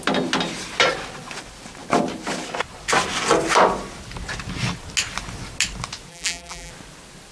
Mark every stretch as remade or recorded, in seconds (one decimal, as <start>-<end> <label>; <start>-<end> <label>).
0.0-6.1 recorded; 6.1-6.7 remade; 6.7-7.3 recorded